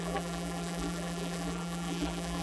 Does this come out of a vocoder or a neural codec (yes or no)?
yes